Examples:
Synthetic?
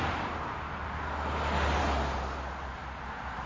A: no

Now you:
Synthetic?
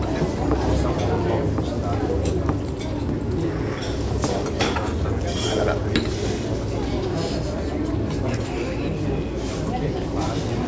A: no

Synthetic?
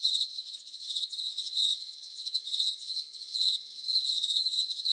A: yes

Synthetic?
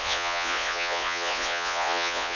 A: yes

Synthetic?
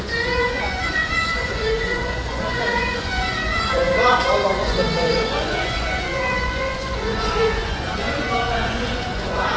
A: yes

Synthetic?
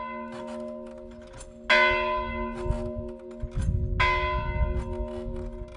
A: no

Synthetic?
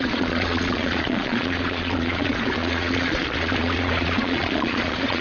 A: yes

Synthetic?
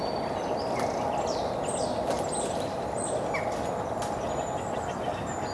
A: no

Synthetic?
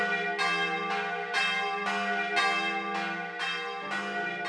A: no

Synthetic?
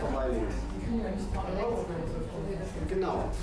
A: no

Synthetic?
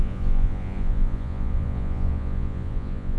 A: yes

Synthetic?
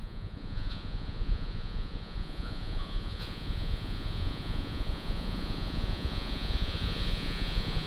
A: yes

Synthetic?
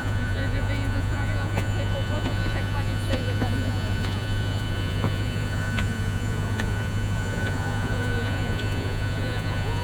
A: yes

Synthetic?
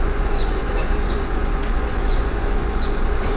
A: yes